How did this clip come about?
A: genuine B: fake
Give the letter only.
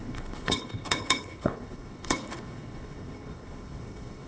B